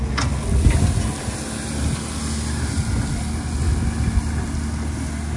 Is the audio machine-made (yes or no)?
no